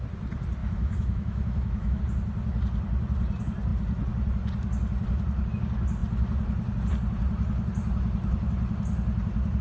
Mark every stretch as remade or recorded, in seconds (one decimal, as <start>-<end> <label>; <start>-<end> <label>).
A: 0.0-0.6 recorded; 0.6-2.0 remade; 2.0-9.6 recorded